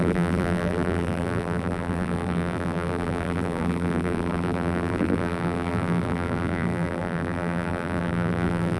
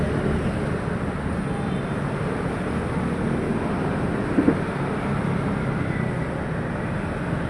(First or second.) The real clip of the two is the second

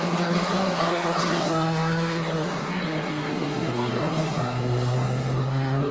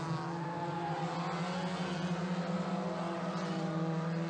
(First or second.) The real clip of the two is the second